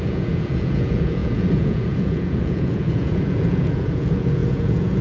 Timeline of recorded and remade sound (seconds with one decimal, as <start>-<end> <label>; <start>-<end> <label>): 0.0-5.0 remade